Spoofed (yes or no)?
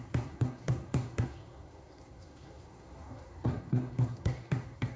yes